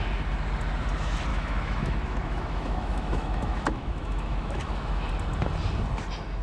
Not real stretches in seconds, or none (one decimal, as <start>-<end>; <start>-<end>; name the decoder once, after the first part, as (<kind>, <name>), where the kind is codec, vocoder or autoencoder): 1.3-5.1 (autoencoder, DAC-VAE)